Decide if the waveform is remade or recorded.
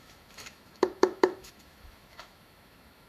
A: remade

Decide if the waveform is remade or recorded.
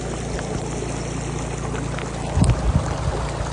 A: recorded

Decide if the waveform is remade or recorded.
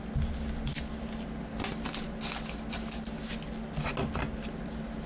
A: recorded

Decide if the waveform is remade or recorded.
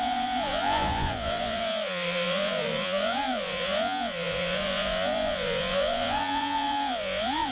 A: remade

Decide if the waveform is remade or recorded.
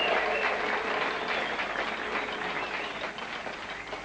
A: recorded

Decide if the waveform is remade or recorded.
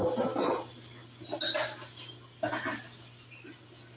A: recorded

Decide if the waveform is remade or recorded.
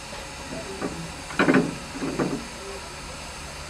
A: recorded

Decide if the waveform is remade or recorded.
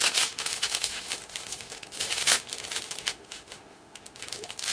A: remade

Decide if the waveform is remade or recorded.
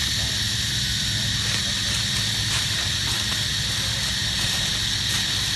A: recorded